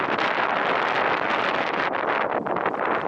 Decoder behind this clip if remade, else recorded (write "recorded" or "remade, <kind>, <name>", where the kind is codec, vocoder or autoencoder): recorded